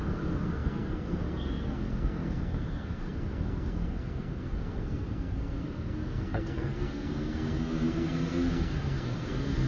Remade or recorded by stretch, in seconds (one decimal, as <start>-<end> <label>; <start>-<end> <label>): 0.0-9.7 remade